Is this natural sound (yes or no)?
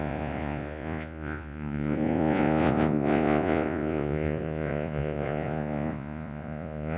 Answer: no